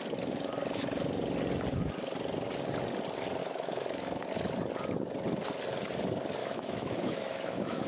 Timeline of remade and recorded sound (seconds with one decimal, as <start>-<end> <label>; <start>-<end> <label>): 0.0-3.4 recorded; 3.4-4.3 remade; 4.3-6.4 recorded; 6.4-7.9 remade